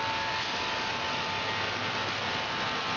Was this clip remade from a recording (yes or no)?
no